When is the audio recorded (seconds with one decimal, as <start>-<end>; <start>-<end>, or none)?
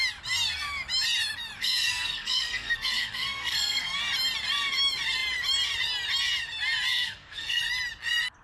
0.0-1.6; 4.0-6.9; 7.6-8.4